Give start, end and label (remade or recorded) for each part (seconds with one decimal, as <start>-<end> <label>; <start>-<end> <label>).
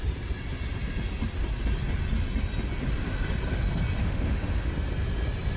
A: 0.0-4.0 recorded; 4.0-4.7 remade; 4.7-5.6 recorded